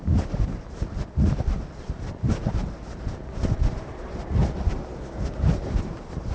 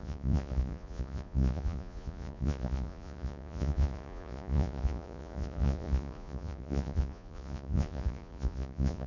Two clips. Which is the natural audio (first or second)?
first